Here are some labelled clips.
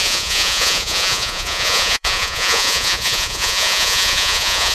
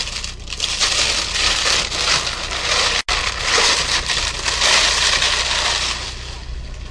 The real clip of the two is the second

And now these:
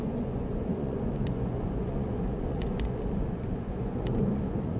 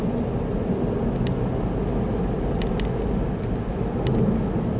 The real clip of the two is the second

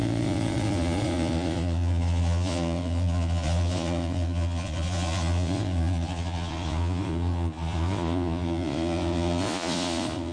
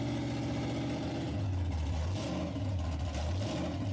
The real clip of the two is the second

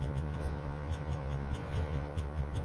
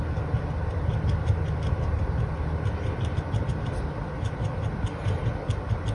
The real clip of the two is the second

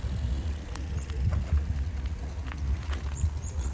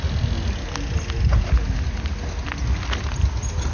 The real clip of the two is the second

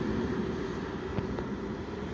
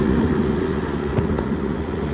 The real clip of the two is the first